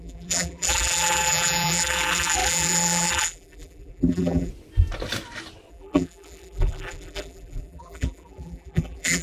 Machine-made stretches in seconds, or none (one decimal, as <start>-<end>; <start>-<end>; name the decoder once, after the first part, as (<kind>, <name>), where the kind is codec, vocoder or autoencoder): 0.0-4.5 (vocoder, BigVGAN v2); 5.7-9.2